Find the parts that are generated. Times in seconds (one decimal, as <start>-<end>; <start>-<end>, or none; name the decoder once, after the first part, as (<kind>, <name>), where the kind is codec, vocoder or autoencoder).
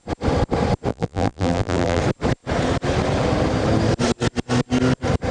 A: 0.9-2.0 (vocoder, BigVGAN v2)